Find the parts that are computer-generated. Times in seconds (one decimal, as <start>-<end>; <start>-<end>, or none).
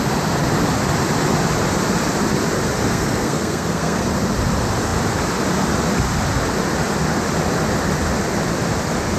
2.9-4.1